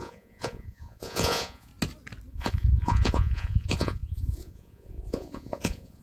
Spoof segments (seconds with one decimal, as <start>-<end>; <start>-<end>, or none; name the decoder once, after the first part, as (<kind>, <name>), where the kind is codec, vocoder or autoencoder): 0.0-1.7 (vocoder, Vocos); 2.3-6.0